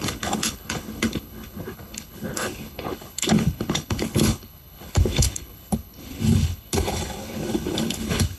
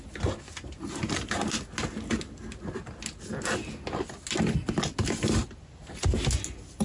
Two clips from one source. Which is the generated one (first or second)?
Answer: first